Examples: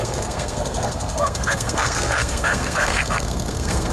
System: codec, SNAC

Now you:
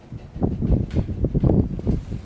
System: none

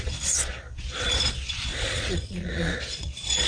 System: vocoder, Vocos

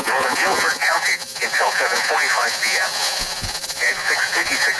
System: vocoder, Vocos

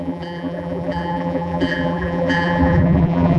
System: vocoder, BigVGAN v2